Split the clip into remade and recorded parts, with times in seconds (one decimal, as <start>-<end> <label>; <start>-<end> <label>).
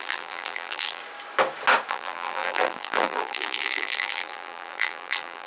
0.0-1.0 remade; 1.0-1.9 recorded; 1.9-5.5 remade